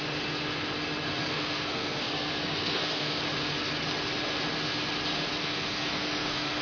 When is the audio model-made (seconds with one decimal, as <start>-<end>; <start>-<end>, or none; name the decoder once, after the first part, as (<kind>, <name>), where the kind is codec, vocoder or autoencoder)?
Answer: 1.2-3.2 (codec, SNAC); 5.4-6.6